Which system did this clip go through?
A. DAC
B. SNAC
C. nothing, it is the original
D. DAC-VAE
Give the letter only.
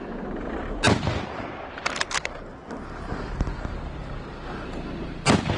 C